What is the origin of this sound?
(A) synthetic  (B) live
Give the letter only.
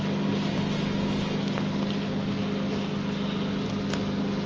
B